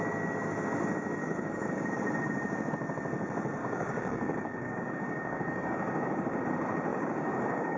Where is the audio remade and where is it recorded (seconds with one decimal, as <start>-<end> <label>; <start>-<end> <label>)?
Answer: 0.0-1.2 recorded; 1.2-2.0 remade; 2.0-3.6 recorded; 3.6-6.4 remade; 6.4-6.9 recorded; 6.9-7.8 remade